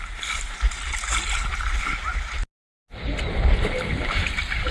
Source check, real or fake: real